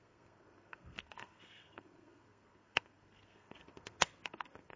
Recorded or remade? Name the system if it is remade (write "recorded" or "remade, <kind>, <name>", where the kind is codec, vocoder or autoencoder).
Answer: remade, codec, SNAC